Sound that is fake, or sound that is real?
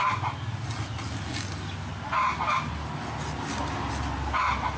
real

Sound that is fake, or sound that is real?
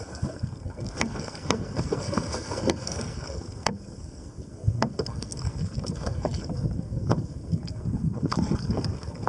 fake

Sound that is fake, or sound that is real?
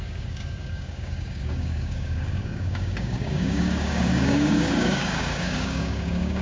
fake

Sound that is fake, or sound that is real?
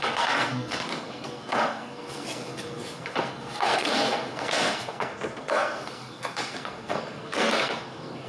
fake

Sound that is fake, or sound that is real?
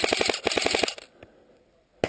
real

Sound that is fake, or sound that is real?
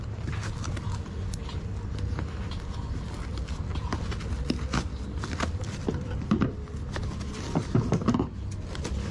real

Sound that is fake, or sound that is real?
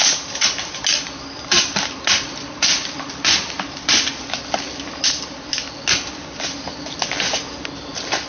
real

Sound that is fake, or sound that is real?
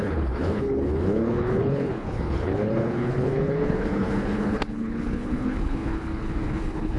fake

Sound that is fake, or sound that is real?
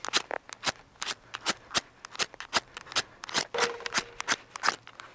real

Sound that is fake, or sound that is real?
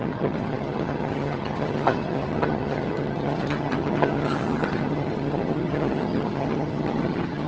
fake